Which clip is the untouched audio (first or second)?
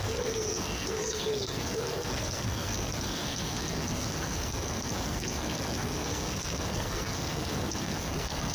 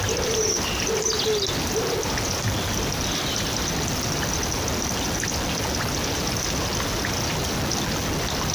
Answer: second